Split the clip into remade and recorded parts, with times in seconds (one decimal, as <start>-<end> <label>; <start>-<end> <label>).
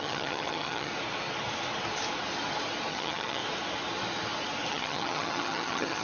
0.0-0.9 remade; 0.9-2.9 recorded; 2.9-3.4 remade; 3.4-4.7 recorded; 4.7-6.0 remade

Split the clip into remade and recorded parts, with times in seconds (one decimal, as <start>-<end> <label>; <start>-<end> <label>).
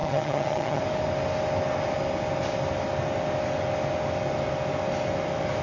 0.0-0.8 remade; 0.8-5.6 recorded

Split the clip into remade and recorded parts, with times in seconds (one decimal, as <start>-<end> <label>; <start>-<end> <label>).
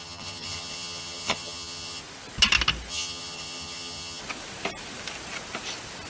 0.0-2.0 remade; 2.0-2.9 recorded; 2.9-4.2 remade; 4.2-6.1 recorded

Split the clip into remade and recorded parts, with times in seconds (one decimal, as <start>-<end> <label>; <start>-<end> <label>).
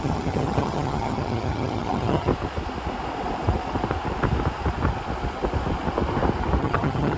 0.0-2.3 remade; 2.3-6.6 recorded; 6.6-7.2 remade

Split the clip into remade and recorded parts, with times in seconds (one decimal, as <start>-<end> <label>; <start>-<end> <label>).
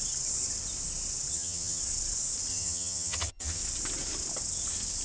0.0-1.3 recorded; 1.3-1.8 remade; 1.8-2.5 recorded; 2.5-3.6 remade; 3.6-5.0 recorded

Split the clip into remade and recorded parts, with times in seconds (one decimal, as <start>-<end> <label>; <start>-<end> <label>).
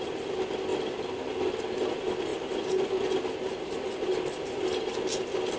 0.0-5.6 recorded